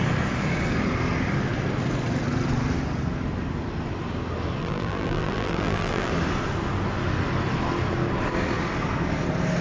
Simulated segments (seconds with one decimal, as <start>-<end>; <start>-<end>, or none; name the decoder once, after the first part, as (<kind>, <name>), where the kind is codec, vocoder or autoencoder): 4.6-6.1 (vocoder, BigVGAN v2)